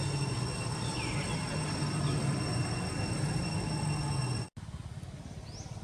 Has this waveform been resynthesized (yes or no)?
no